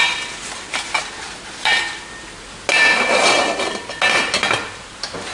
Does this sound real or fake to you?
real